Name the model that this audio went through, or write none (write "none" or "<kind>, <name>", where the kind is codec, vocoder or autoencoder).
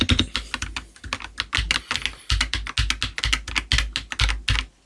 none